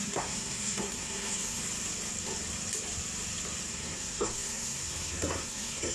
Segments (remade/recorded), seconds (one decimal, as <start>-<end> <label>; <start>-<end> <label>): 0.0-1.6 remade; 1.6-3.7 recorded; 3.7-5.9 remade